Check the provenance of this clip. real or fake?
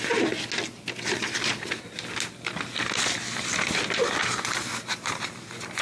real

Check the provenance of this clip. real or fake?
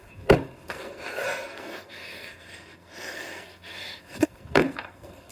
fake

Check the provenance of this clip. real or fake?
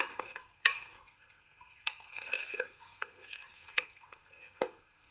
fake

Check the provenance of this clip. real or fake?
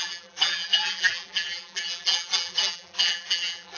fake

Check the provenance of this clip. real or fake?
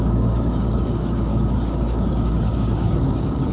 fake